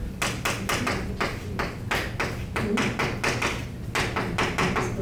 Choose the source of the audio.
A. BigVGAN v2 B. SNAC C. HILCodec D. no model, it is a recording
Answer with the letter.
D